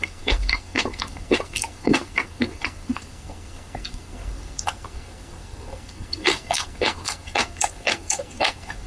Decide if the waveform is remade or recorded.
remade